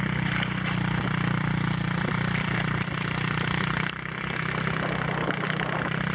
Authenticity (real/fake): real